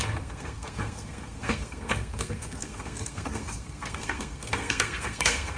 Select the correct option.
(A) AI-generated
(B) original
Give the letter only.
A